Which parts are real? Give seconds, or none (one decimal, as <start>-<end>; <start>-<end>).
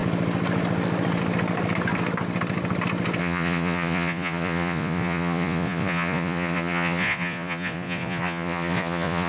0.0-3.2